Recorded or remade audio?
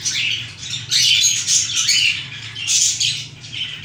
recorded